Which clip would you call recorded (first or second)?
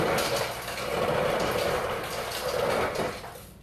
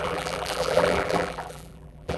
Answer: first